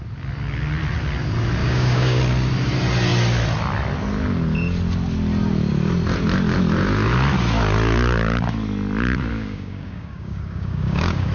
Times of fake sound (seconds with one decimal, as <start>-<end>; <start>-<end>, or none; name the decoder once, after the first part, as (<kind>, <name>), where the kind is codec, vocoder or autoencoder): 1.6-2.2 (codec, DAC); 9.3-11.3